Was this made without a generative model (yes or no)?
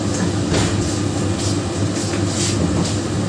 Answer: yes